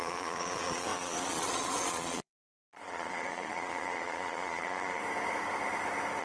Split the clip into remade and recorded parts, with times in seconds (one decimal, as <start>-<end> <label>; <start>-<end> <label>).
0.0-5.0 remade; 5.0-6.2 recorded